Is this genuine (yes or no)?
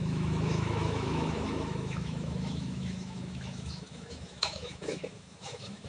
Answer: no